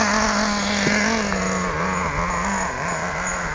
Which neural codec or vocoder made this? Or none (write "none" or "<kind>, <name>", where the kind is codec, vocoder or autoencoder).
none